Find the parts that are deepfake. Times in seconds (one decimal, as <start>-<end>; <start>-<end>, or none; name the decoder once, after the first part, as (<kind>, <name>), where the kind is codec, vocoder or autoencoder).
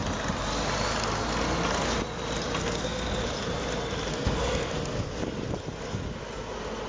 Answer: 2.6-3.2 (codec, SNAC); 4.1-5.2